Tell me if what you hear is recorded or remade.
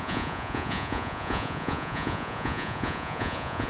remade